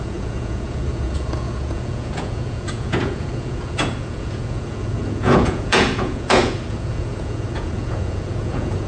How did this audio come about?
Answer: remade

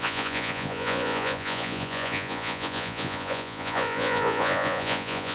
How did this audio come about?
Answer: remade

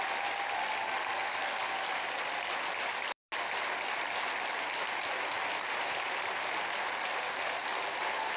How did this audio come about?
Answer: recorded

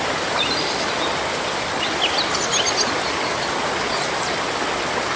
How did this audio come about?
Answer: recorded